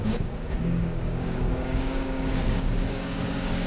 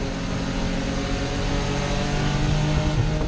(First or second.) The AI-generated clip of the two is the first